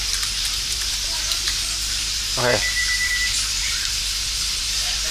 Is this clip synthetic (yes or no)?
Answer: yes